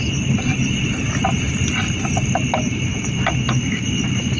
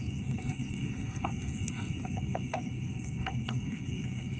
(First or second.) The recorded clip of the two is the first